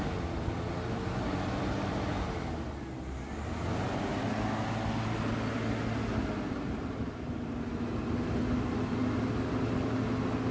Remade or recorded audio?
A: recorded